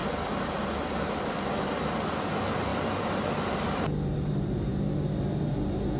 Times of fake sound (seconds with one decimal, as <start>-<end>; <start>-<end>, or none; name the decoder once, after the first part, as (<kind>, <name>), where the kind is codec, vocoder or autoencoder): none